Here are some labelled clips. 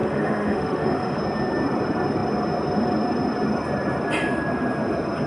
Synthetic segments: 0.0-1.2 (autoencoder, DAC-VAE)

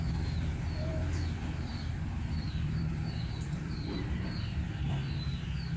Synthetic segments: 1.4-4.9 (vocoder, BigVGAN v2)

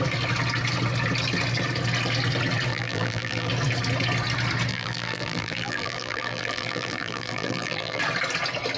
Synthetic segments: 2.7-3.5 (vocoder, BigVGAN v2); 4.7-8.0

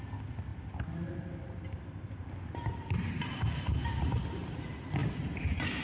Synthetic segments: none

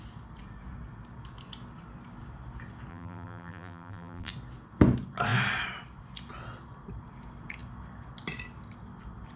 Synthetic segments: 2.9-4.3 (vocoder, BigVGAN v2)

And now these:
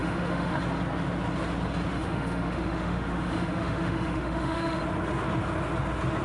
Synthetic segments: 0.0-0.6 (autoencoder, DAC-VAE); 1.9-4.8

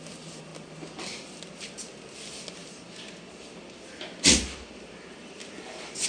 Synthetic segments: none